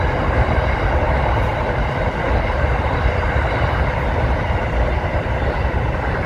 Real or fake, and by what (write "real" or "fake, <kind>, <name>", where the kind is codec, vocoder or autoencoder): real